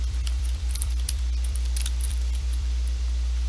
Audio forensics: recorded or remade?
remade